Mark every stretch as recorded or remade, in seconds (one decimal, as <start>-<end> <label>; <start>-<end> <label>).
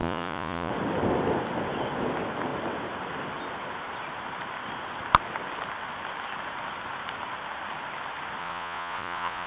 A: 0.0-0.7 remade; 0.7-8.4 recorded; 8.4-9.5 remade